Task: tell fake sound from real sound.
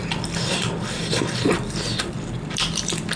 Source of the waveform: fake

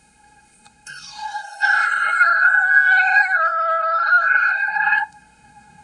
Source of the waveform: fake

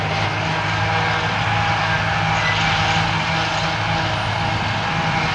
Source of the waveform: real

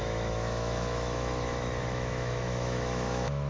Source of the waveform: fake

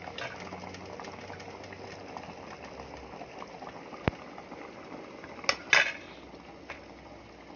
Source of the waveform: real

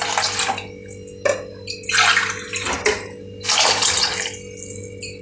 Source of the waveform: real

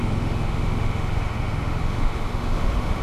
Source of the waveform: fake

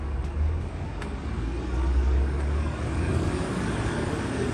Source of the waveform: fake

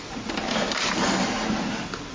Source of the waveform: real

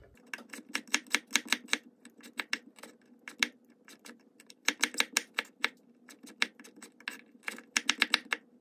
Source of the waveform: real